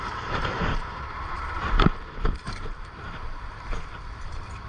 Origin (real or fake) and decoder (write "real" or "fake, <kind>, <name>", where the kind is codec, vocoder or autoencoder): fake, vocoder, BigVGAN v2